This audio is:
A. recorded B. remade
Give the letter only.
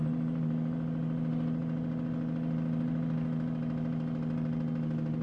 A